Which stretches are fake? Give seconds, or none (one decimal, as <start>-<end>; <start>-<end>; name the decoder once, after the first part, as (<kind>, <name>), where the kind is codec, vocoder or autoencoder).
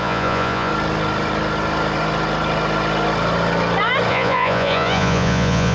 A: 0.0-0.7 (vocoder, Vocos); 4.1-5.7